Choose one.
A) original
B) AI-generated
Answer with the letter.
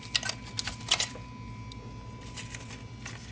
A